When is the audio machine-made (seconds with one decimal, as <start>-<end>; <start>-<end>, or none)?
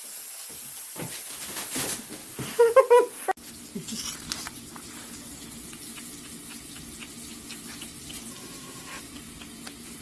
8.3-9.0